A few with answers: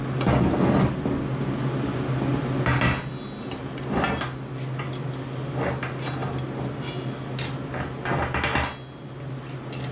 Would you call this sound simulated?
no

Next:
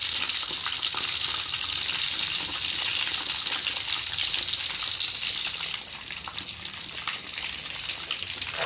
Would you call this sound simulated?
no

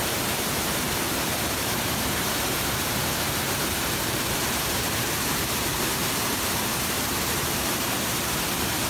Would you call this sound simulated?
yes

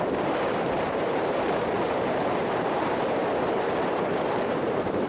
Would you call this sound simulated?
yes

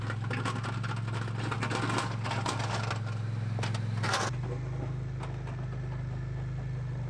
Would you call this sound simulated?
no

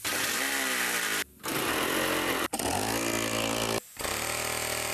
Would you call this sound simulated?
no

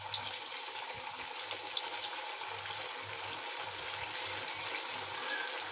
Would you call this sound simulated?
no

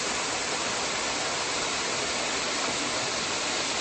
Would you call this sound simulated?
no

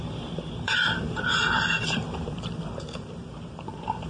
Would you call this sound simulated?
yes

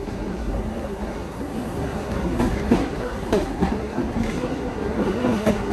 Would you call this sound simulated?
yes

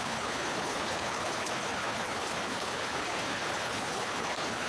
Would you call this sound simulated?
yes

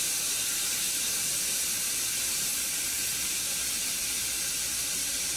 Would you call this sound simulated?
no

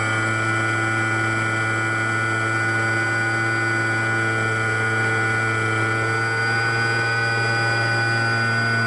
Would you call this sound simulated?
no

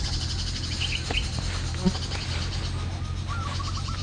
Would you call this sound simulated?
no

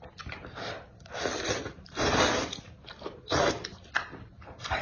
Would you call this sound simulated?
yes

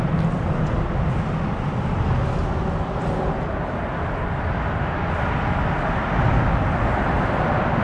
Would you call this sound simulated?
no